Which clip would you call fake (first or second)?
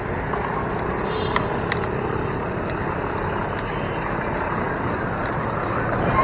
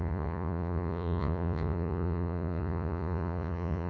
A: second